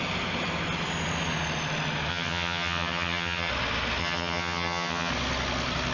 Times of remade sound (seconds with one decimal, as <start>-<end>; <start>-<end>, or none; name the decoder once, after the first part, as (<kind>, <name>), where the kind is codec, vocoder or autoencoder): 2.1-3.5 (vocoder, HiFi-GAN); 4.0-5.1